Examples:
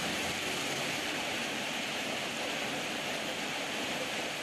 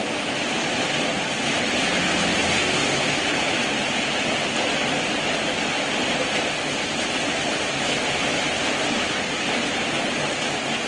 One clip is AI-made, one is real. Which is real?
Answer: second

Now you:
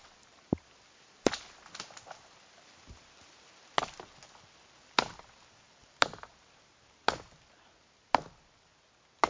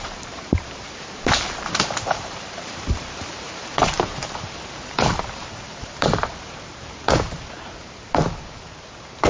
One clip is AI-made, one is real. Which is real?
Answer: first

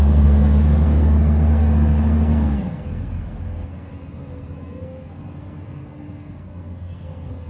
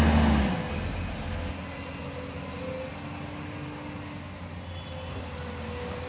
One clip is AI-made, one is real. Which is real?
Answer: second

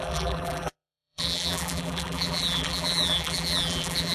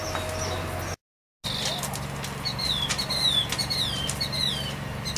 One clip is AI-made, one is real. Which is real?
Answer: second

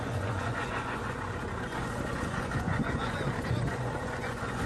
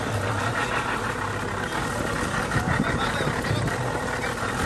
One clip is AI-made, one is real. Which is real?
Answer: second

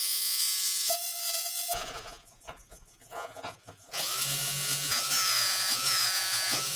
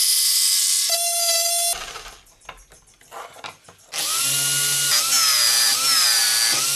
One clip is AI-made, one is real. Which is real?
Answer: second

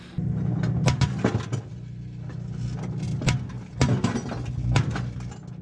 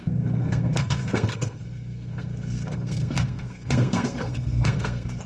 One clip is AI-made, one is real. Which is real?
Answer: first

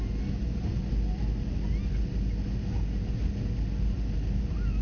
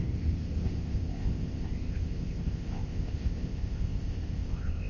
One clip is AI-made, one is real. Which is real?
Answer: first